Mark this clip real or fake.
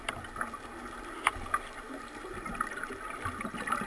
real